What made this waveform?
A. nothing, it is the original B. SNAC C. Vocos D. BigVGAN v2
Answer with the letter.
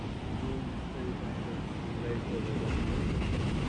A